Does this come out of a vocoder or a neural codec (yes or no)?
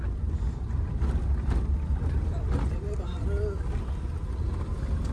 no